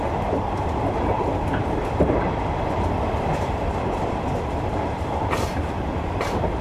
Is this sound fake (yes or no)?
yes